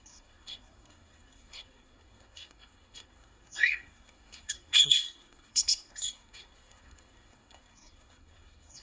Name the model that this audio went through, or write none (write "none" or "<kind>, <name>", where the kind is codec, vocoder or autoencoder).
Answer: codec, SNAC